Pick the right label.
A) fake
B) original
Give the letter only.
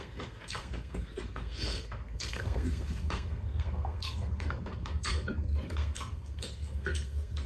A